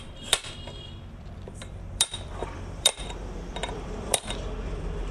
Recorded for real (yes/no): no